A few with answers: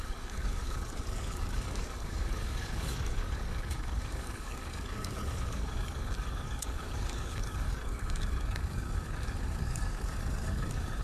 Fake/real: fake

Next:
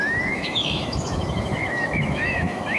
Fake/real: fake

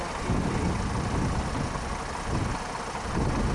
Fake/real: real